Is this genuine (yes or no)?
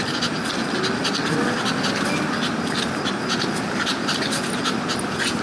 yes